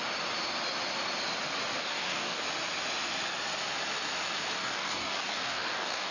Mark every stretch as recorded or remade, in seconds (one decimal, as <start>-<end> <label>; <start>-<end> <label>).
0.0-1.8 recorded; 1.8-2.4 remade; 2.4-4.6 recorded; 4.6-6.1 remade